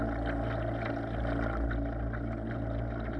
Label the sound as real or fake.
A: real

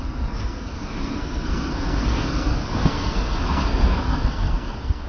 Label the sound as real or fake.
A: fake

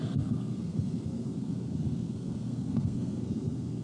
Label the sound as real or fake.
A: fake